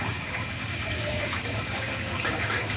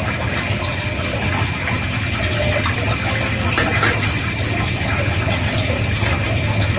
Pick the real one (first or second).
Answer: second